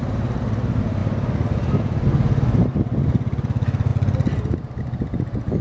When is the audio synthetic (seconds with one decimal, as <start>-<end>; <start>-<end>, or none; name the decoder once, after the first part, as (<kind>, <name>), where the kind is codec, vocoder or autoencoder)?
none